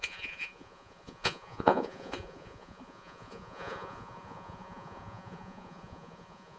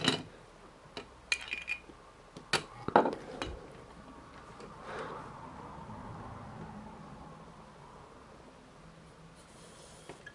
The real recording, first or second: second